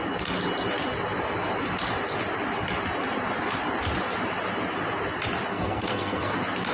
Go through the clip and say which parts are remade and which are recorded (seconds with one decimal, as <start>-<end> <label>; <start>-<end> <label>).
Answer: 0.0-5.5 recorded; 5.5-6.3 remade; 6.3-6.7 recorded